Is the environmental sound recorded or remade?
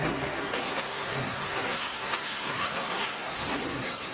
remade